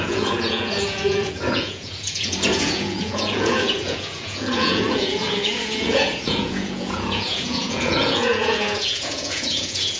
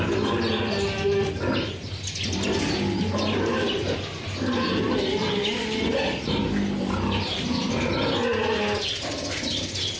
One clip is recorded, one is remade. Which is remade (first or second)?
first